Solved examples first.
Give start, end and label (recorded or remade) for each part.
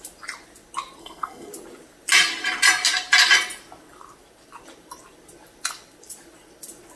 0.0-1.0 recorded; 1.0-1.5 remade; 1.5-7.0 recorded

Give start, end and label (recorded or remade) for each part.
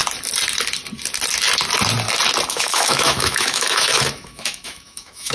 0.0-2.5 recorded; 2.5-5.3 remade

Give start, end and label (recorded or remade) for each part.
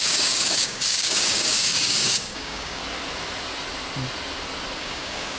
0.0-2.8 remade; 2.8-4.8 recorded; 4.8-5.4 remade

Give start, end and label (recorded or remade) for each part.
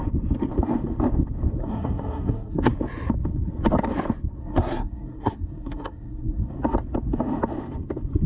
0.0-1.6 recorded; 1.6-2.7 remade; 2.7-4.4 recorded; 4.4-6.5 remade; 6.5-8.3 recorded